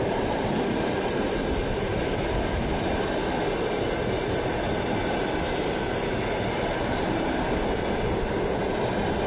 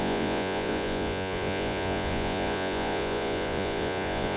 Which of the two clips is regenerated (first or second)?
second